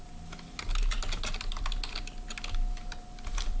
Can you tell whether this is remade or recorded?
recorded